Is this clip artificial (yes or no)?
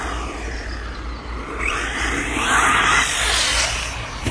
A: no